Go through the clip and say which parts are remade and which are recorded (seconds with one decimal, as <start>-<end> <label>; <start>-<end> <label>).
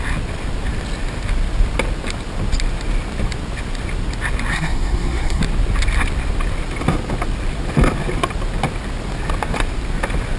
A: 0.0-4.5 recorded; 4.5-5.4 remade; 5.4-10.4 recorded